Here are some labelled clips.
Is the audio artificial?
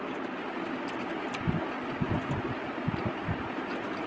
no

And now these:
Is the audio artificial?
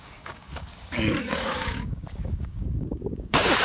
yes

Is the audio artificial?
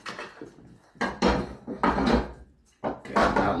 no